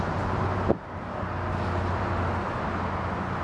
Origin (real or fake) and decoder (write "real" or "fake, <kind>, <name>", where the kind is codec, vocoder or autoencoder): real